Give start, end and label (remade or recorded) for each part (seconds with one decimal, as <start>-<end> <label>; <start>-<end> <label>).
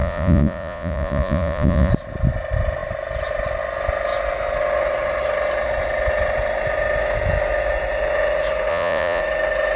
0.0-1.9 remade; 1.9-8.7 recorded; 8.7-9.2 remade; 9.2-9.8 recorded